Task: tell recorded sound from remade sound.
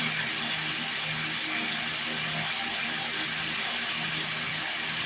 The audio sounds recorded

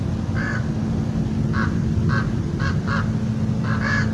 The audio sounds recorded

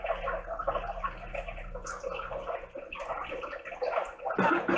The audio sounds recorded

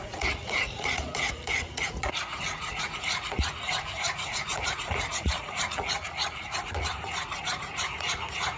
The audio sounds remade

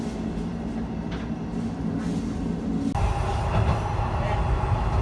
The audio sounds recorded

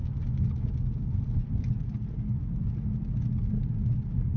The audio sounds recorded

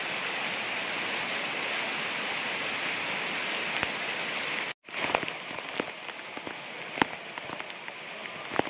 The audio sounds recorded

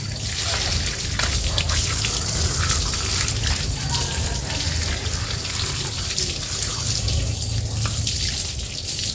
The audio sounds recorded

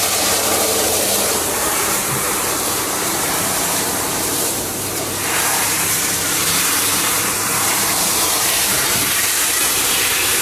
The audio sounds remade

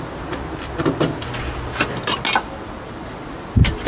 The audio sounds recorded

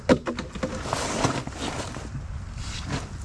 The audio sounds recorded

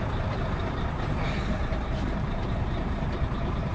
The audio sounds remade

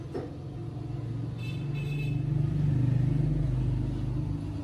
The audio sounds recorded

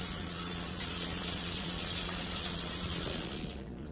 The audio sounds remade